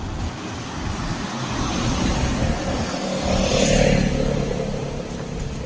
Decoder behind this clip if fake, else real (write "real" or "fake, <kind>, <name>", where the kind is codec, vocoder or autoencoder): real